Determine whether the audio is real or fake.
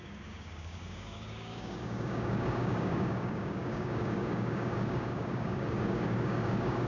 fake